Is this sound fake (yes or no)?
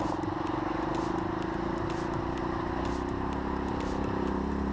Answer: no